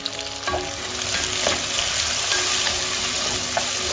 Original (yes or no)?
yes